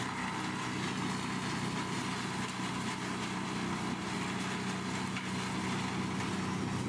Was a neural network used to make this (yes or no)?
no